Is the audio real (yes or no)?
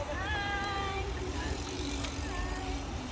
no